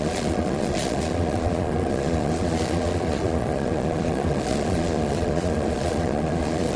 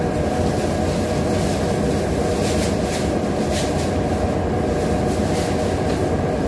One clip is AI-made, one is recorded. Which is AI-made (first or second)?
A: first